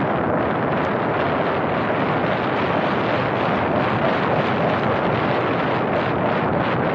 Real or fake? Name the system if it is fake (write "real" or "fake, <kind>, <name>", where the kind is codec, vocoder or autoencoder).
real